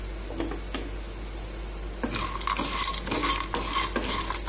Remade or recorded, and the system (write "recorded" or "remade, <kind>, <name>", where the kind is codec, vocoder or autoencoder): recorded